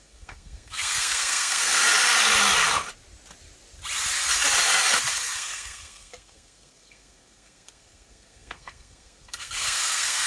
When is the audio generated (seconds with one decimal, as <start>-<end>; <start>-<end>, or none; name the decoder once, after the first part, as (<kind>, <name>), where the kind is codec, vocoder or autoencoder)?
0.0-1.8 (codec, SNAC); 5.1-10.3